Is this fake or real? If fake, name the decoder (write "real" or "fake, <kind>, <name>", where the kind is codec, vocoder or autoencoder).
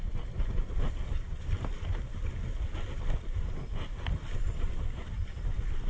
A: real